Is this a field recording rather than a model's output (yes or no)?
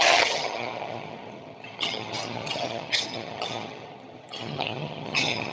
no